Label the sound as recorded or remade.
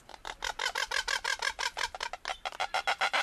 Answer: recorded